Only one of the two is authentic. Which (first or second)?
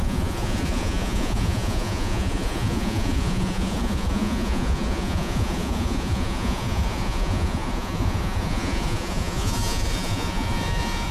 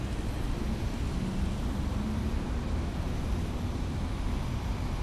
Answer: second